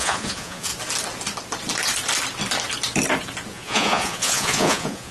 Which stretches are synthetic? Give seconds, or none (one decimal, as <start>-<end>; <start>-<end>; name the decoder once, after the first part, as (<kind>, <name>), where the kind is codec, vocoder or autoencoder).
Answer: 0.0-0.7 (vocoder, Vocos); 3.5-5.1